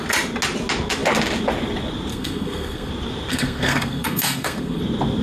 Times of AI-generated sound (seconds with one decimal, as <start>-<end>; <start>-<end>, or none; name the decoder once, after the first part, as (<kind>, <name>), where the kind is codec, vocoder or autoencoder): 2.1-2.9 (codec, SNAC); 3.3-4.8